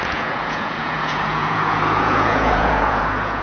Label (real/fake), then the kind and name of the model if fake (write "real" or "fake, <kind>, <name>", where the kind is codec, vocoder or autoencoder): fake, vocoder, Vocos